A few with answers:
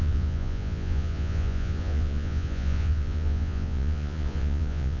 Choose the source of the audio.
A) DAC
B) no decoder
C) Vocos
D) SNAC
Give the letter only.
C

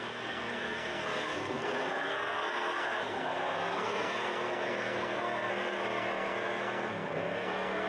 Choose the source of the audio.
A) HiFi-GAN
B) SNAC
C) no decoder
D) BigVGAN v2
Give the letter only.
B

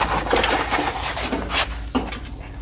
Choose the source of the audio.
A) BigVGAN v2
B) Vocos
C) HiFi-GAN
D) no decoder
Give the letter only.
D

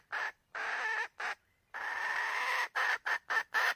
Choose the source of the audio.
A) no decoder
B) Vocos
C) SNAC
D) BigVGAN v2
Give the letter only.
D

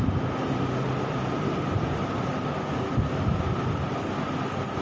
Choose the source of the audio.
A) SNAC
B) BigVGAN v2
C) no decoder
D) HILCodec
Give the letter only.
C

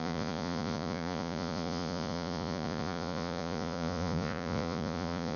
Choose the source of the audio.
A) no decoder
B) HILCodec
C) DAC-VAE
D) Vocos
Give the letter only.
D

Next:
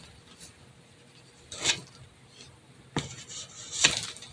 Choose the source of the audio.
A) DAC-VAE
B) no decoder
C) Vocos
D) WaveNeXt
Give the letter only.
B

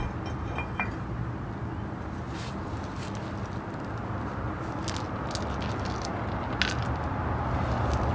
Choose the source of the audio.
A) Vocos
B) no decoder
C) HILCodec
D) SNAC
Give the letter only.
B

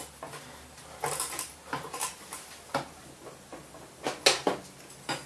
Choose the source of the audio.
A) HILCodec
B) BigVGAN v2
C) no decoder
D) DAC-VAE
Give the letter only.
C